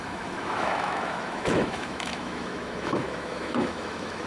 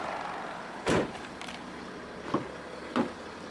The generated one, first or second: first